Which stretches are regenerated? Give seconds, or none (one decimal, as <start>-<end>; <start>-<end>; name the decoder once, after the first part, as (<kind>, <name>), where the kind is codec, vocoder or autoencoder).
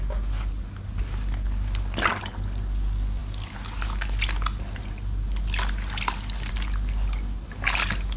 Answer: none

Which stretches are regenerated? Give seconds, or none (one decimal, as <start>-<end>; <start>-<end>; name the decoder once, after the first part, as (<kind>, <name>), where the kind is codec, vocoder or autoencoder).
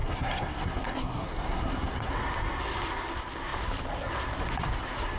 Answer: 0.0-2.1 (codec, SNAC)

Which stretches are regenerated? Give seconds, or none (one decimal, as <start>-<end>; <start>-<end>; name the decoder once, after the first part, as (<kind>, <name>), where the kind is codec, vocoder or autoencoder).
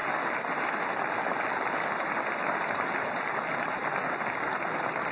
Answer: none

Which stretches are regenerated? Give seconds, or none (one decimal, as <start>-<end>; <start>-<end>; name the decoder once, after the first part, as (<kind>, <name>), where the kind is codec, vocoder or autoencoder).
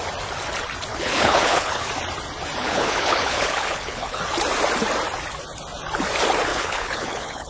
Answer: 0.9-1.9 (codec, HILCodec); 2.6-4.2; 6.5-7.5